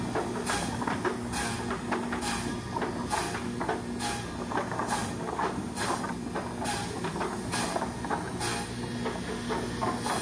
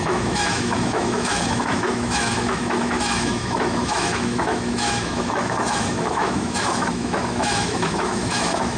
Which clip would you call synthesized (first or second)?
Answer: second